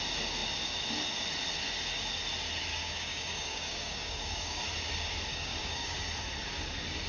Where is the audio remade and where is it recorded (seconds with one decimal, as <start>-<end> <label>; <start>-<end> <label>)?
0.0-2.7 recorded; 2.7-4.6 remade; 4.6-5.3 recorded; 5.3-6.0 remade; 6.0-7.1 recorded